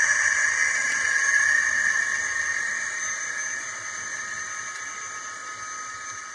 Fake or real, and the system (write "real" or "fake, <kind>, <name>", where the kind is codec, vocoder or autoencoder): real